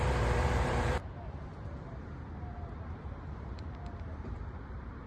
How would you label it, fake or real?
fake